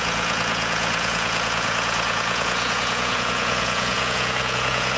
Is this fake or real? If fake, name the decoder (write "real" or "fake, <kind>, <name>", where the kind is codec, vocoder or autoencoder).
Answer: fake, vocoder, Vocos